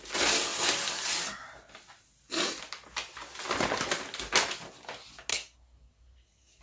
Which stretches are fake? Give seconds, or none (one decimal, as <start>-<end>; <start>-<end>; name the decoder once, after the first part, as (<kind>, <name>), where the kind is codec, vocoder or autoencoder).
5.3-6.6 (codec, SNAC)